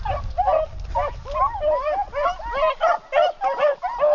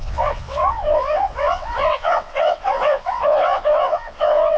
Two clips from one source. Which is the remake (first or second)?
second